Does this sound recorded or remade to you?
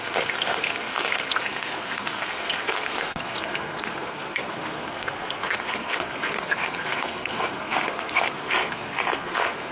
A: remade